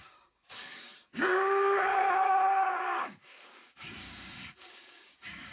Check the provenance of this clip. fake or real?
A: fake